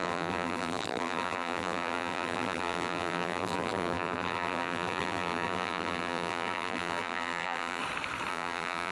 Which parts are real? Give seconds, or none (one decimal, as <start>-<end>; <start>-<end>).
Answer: 7.8-8.3